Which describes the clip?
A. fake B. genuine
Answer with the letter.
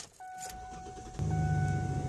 B